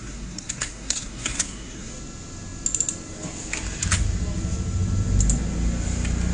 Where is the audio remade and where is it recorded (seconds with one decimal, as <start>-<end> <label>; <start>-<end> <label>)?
0.0-1.9 remade; 1.9-6.3 recorded